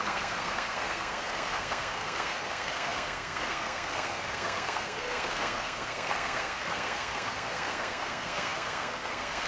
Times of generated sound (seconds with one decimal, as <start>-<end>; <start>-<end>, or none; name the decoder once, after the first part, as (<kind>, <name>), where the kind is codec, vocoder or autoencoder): 0.0-9.5 (codec, SNAC)